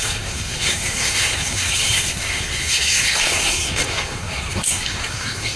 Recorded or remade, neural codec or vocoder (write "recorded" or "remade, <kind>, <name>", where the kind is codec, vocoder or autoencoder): remade, codec, SNAC